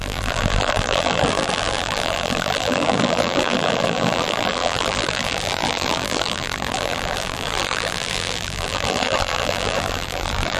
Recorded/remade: remade